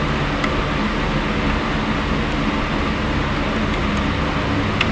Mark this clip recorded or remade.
recorded